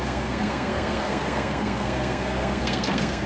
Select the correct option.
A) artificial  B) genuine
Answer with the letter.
A